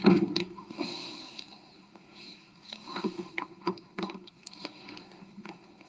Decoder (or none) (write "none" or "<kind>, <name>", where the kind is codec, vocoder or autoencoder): codec, SNAC